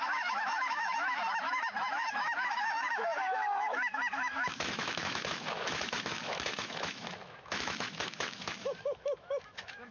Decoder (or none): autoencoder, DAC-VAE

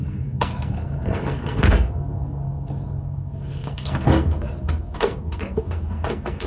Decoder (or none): codec, SNAC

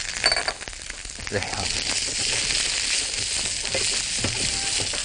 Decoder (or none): none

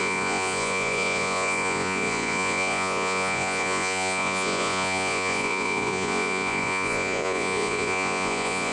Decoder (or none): vocoder, Vocos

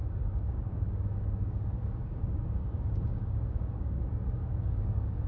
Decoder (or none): codec, DAC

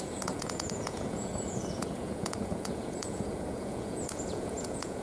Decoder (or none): vocoder, Vocos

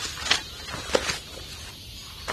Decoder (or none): none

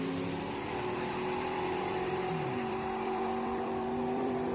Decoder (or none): vocoder, BigVGAN v2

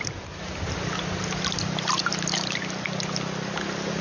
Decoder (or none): none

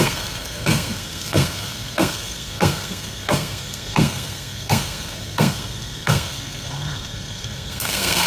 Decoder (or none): codec, SNAC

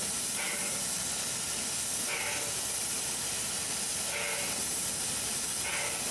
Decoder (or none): none